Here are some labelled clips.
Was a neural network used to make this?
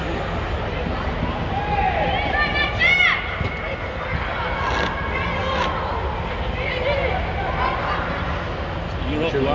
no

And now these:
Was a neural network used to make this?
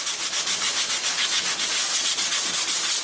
no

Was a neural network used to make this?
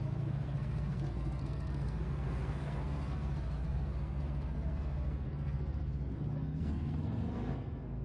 yes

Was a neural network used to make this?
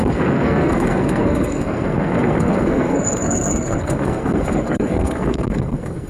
yes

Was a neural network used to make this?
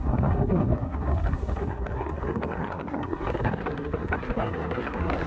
yes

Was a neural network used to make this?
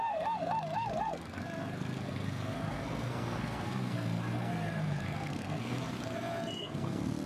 yes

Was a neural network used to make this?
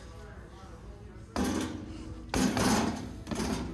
no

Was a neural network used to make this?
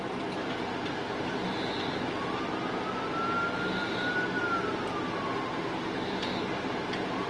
no